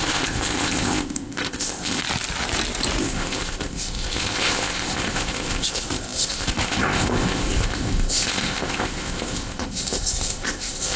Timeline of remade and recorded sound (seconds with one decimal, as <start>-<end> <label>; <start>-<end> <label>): 0.0-2.0 remade; 2.0-3.0 recorded; 3.0-11.0 remade